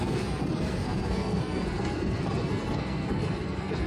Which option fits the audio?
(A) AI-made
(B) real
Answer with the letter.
A